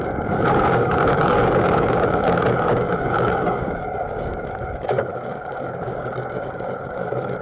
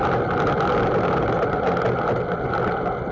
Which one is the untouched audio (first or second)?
second